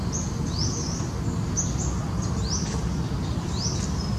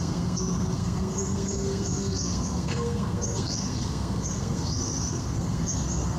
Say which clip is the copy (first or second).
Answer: second